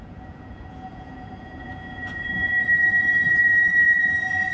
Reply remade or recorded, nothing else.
remade